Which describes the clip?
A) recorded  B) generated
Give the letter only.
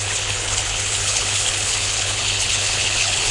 B